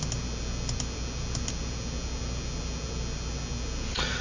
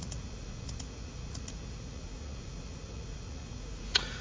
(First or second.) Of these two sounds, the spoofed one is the second